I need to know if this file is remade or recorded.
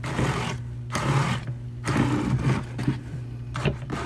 recorded